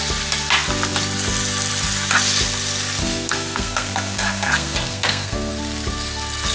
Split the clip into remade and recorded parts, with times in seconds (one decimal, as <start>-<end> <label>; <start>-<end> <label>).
0.0-3.0 recorded; 3.0-5.5 remade; 5.5-6.5 recorded